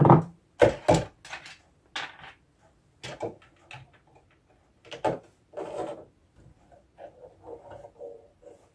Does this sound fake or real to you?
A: real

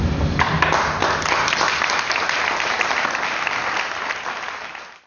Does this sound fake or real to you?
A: real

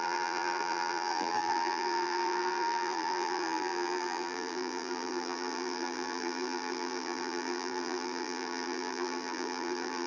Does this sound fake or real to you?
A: fake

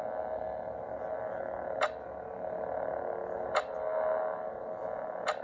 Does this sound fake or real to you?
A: real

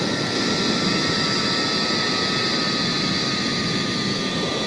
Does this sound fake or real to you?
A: real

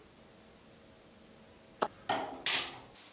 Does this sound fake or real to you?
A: real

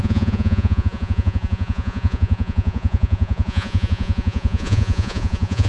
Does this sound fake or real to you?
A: fake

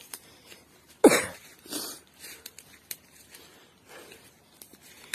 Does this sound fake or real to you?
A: real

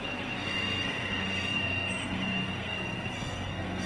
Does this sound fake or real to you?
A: fake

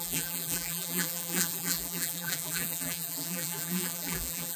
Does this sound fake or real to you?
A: fake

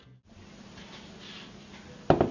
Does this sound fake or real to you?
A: real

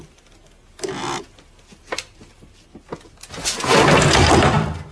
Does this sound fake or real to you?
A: real